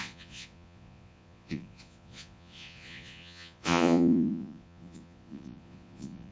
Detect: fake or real fake